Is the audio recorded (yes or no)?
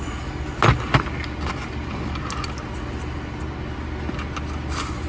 yes